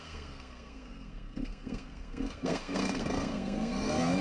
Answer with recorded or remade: remade